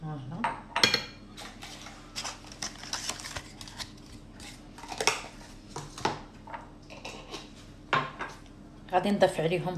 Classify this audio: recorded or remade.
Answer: recorded